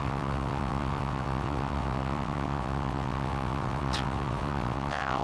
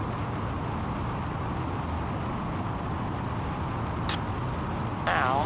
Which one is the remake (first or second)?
first